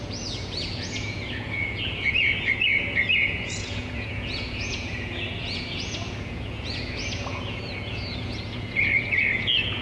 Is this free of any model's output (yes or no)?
no